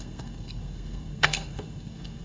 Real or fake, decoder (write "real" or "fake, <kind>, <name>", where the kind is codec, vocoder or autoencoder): fake, codec, SNAC